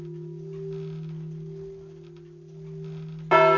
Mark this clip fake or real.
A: real